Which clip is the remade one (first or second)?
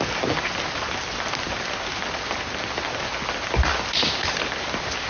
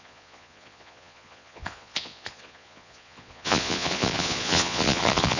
second